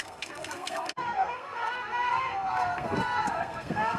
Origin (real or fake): fake